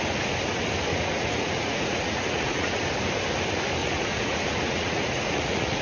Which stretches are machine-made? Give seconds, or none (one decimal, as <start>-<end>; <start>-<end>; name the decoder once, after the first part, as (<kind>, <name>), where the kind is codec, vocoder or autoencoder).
0.9-2.8 (vocoder, Vocos); 3.8-5.8